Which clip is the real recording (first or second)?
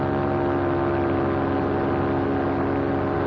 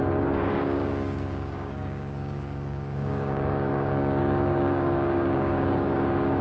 first